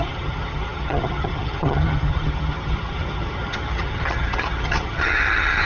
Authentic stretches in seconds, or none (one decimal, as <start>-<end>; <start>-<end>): none